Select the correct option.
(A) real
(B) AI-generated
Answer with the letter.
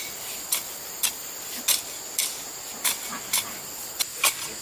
A